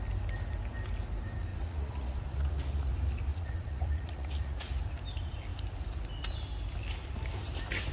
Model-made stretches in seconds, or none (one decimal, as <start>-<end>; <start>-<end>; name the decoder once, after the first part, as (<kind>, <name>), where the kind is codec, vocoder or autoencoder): 1.5-2.9 (vocoder, Vocos); 3.3-4.8